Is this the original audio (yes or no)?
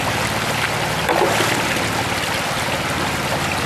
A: yes